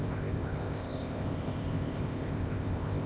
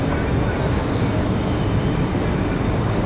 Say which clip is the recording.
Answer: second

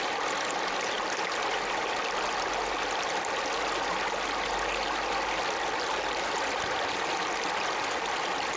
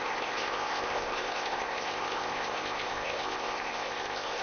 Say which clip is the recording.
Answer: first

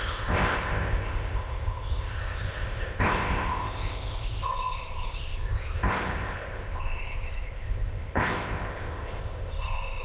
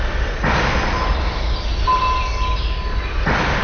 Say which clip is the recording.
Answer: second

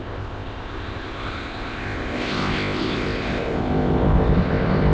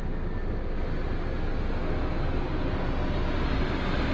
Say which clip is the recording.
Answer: second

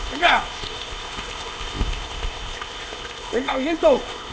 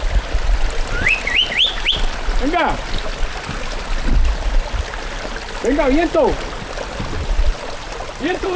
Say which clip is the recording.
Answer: second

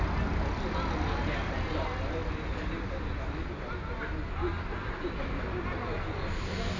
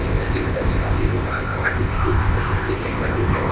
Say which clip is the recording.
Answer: first